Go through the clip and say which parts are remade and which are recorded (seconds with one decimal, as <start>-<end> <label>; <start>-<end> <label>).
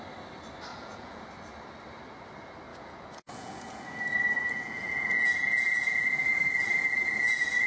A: 0.0-0.7 recorded; 0.7-1.2 remade; 1.2-2.7 recorded; 2.7-6.4 remade; 6.4-7.7 recorded